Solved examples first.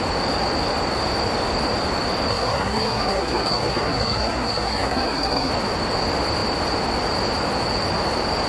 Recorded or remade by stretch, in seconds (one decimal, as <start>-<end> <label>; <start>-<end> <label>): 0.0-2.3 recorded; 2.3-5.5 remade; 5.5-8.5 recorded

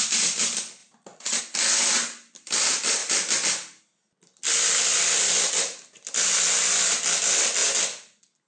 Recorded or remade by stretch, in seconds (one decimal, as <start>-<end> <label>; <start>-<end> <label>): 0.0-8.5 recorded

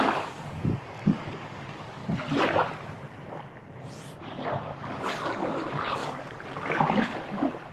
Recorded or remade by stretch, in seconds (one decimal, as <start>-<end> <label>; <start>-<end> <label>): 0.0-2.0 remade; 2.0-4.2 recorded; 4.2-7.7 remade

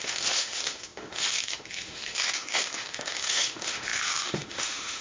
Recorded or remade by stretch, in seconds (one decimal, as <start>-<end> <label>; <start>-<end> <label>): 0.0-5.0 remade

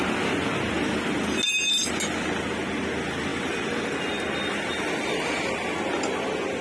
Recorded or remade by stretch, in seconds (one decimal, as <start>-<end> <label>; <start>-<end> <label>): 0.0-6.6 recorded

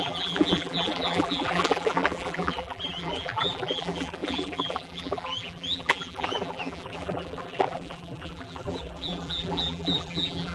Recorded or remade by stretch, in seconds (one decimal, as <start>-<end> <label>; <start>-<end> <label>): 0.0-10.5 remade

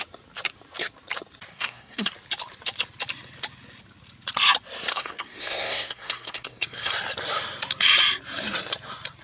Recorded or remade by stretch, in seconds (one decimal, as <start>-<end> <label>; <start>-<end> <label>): 0.0-1.5 recorded; 1.5-2.1 remade; 2.1-4.9 recorded; 4.9-6.9 remade; 6.9-9.2 recorded